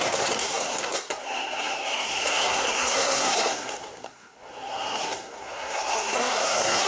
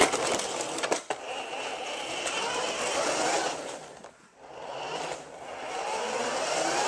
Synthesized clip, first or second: first